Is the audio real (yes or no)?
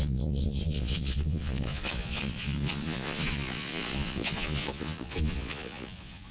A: no